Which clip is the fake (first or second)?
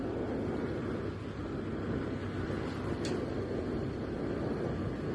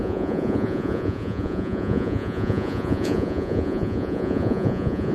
second